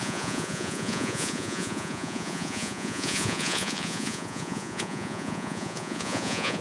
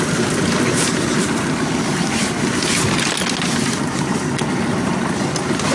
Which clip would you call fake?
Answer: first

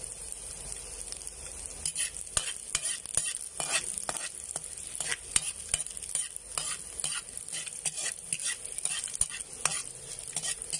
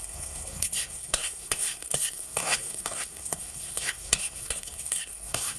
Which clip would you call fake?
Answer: second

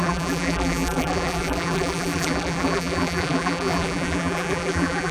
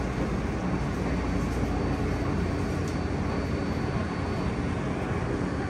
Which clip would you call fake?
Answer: first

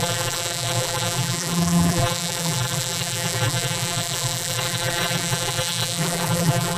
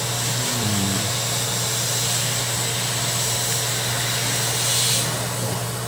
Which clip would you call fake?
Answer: first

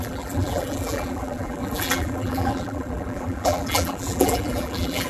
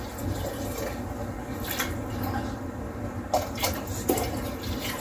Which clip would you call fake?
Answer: first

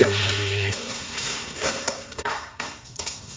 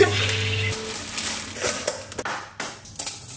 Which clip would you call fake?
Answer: first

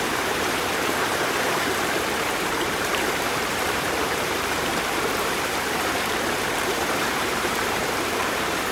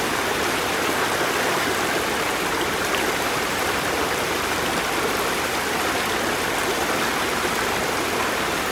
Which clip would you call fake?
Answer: first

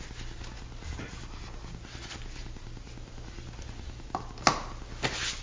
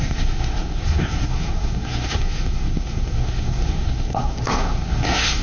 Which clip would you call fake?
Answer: second